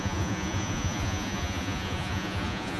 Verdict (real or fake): fake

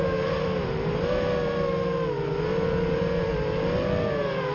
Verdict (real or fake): real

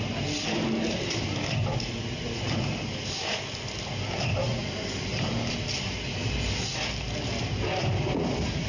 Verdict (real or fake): real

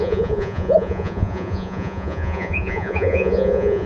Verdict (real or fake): fake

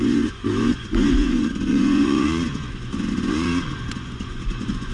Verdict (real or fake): fake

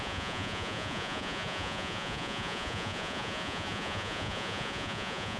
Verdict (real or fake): fake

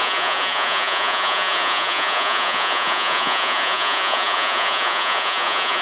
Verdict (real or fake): fake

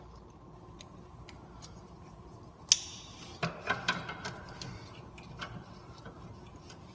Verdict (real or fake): real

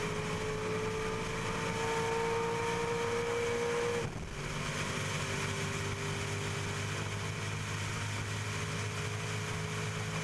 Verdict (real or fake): real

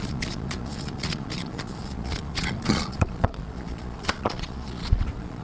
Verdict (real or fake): fake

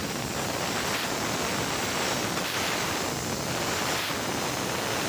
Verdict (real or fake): real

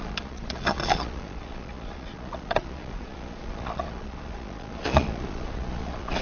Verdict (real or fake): fake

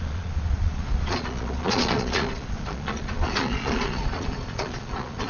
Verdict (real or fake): fake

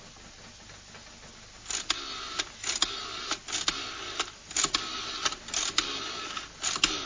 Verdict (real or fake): real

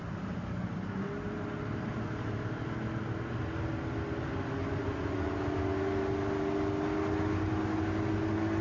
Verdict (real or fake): real